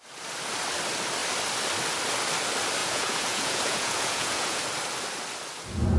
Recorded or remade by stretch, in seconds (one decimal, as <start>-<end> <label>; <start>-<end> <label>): 0.0-2.8 recorded; 2.8-4.6 remade; 4.6-6.0 recorded